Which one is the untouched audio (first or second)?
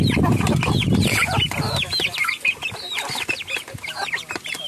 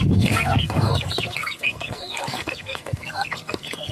first